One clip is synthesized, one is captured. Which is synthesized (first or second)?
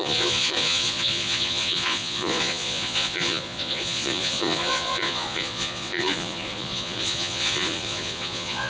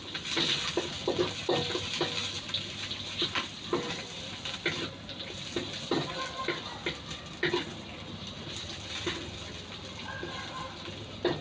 first